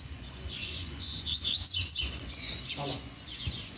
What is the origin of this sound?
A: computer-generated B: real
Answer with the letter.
A